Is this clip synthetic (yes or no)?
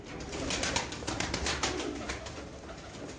no